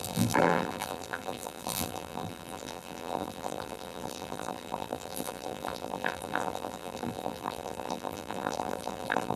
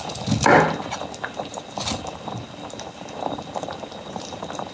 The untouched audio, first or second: second